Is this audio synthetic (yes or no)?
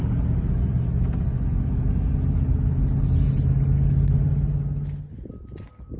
no